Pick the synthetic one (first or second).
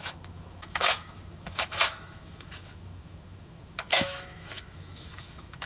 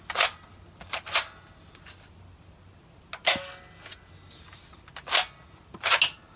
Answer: first